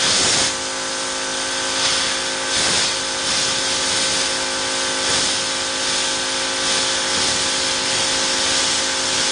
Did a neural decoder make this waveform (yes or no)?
no